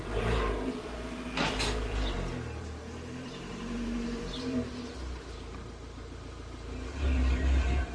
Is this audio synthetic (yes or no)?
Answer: yes